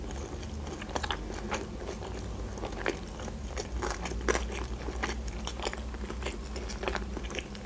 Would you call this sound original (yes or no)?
yes